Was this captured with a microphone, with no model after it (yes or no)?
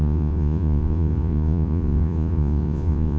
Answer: no